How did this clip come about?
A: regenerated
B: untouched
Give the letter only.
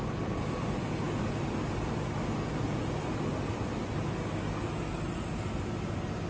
B